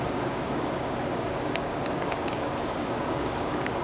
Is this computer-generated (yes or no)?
yes